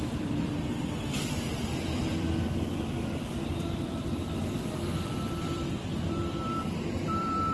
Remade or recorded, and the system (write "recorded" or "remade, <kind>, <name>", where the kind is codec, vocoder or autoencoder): remade, vocoder, BigVGAN v2